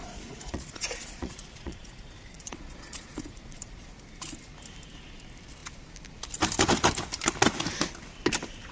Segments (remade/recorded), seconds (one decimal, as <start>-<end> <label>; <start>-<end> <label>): 0.0-3.9 remade; 3.9-8.7 recorded